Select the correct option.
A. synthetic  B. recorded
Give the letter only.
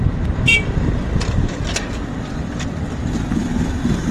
B